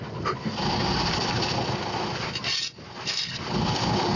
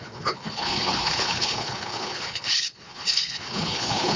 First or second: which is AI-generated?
second